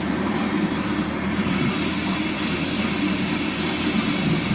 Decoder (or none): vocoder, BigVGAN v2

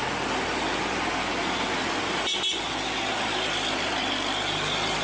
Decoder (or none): none